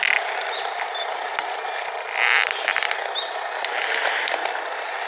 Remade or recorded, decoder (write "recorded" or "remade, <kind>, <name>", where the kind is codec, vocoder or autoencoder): recorded